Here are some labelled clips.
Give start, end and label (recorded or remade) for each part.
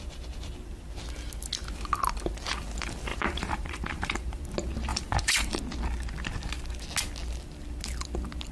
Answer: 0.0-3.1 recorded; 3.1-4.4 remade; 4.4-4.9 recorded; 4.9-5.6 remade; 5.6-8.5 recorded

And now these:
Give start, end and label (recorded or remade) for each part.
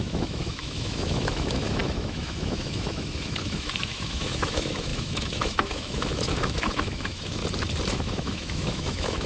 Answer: 0.0-7.4 remade; 7.4-7.9 recorded; 7.9-9.3 remade